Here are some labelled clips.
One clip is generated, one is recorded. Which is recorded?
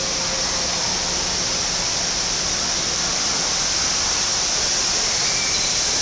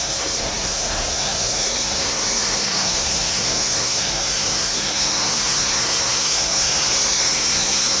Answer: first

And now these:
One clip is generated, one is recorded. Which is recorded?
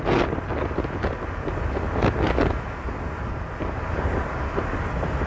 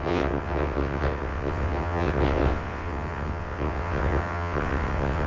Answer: first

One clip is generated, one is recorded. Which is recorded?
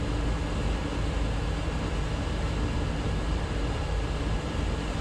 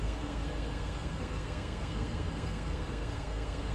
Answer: first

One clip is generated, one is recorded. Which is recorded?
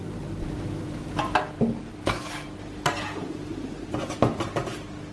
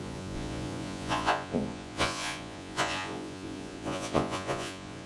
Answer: first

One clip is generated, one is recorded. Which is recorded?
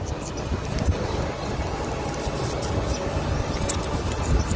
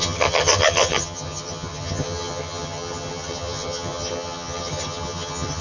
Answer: first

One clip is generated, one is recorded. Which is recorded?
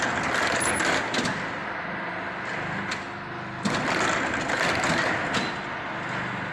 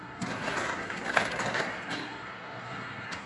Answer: first